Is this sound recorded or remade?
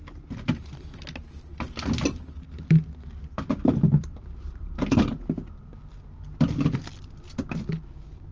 recorded